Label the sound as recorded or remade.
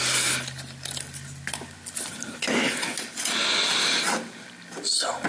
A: recorded